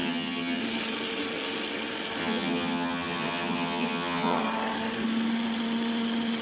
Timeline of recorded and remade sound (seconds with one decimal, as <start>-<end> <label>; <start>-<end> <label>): 0.0-0.6 remade; 0.6-2.2 recorded; 2.2-4.4 remade; 4.4-6.4 recorded